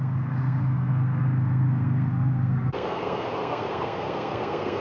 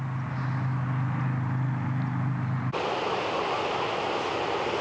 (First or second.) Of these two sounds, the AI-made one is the first